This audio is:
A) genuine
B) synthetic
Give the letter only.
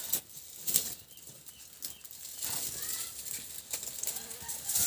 A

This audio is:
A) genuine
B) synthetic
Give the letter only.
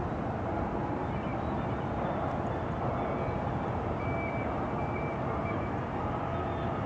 A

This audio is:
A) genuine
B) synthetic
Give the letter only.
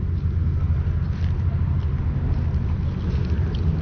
A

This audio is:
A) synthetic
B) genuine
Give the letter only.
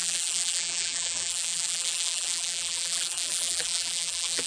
A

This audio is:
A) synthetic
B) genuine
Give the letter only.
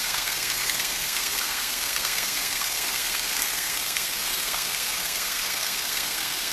A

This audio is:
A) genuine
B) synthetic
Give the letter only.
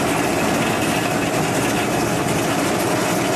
A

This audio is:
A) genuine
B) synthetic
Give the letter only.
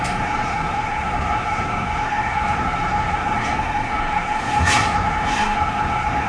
B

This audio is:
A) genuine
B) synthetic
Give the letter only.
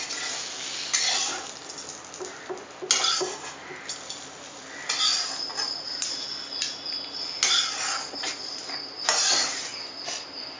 A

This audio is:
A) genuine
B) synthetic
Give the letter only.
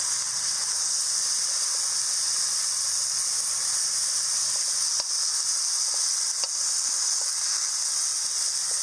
A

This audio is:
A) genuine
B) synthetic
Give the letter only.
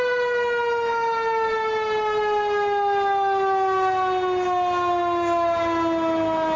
A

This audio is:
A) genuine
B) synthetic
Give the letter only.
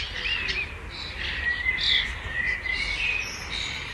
A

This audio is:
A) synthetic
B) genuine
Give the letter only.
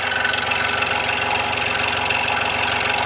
B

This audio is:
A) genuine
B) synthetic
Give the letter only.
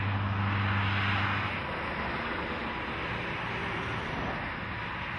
A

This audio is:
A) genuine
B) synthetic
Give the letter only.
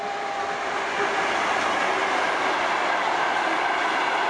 A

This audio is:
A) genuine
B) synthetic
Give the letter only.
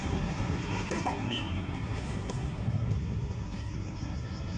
B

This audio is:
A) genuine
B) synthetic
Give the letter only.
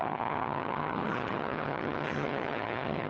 B